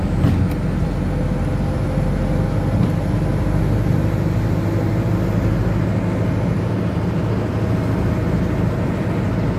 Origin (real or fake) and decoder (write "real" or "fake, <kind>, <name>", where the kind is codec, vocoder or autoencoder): real